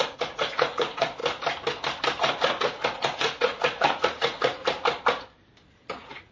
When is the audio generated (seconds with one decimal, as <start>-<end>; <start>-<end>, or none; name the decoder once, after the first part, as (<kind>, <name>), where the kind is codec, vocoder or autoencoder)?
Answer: 0.0-1.2 (vocoder, Vocos); 2.2-4.6; 5.7-6.3